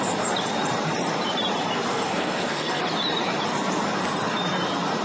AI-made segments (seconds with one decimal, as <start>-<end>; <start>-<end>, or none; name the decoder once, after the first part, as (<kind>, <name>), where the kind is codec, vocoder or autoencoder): 1.9-2.8 (codec, SNAC)